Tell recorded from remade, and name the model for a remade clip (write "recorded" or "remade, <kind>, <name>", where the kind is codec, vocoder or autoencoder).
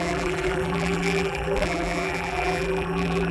remade, vocoder, BigVGAN v2